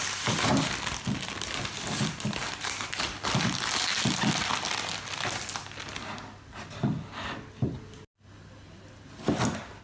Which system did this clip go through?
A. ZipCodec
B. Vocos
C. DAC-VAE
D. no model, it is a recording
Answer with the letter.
D